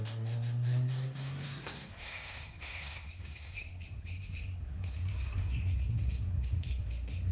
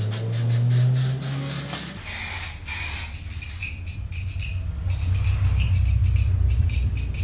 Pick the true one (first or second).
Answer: second